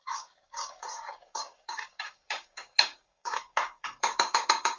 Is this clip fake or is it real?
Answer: fake